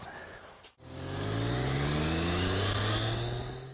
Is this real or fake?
real